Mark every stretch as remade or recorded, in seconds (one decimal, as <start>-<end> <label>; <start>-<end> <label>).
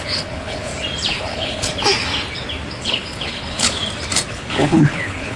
0.0-0.7 remade; 0.7-1.2 recorded; 1.2-1.7 remade; 1.7-2.8 recorded; 2.8-3.8 remade; 3.8-4.3 recorded; 4.3-5.4 remade